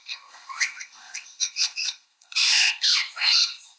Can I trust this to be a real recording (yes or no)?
no